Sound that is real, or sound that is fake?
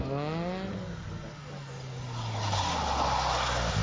real